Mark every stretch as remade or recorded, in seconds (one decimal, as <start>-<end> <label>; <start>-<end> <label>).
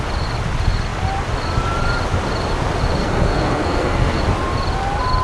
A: 0.0-3.0 recorded; 3.0-4.2 remade; 4.2-5.2 recorded